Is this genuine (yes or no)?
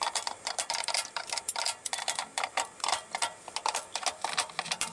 yes